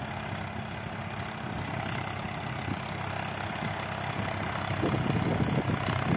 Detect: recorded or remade recorded